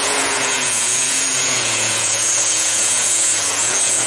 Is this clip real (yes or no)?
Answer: no